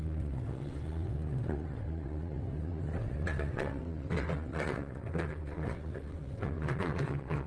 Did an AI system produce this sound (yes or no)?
yes